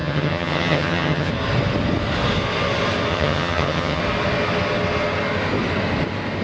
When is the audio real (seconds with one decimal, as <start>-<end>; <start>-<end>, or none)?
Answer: 1.3-3.1; 4.0-6.4